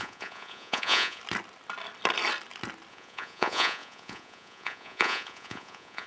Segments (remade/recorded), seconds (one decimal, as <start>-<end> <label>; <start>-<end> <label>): 0.0-1.2 remade; 1.2-2.9 recorded; 2.9-6.1 remade